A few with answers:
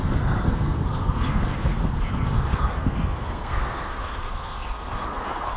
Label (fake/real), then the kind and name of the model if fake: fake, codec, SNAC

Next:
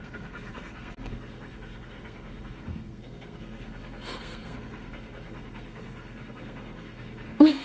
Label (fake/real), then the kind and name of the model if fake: fake, codec, SNAC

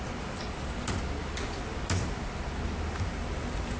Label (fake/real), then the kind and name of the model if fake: real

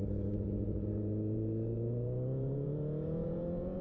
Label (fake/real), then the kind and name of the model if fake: fake, vocoder, Vocos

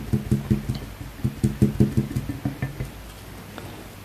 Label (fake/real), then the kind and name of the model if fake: real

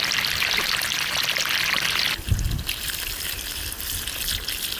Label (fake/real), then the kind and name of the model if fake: real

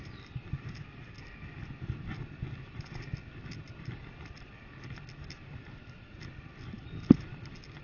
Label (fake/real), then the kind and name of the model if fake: real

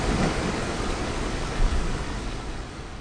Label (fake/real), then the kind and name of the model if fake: fake, codec, DAC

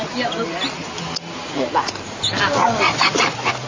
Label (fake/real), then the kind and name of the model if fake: real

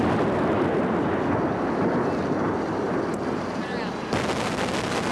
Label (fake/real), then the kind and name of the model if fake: real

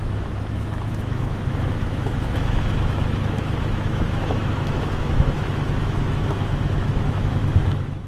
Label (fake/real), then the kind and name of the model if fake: fake, autoencoder, DAC-VAE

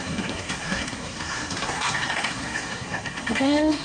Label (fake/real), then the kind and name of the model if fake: fake, codec, SNAC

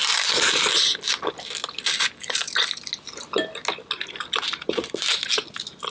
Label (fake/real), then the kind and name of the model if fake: real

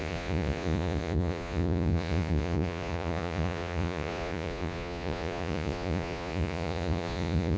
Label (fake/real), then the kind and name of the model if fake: fake, vocoder, Vocos